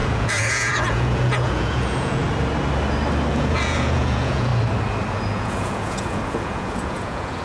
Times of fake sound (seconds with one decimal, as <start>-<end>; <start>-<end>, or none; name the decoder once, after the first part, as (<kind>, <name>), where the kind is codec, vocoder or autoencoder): 0.0-2.2 (vocoder, Vocos); 3.3-4.5; 5.1-7.4